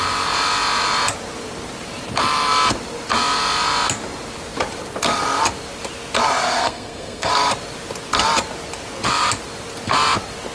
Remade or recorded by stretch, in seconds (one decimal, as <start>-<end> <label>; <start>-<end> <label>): 0.0-6.6 recorded; 6.6-7.3 remade; 7.3-10.5 recorded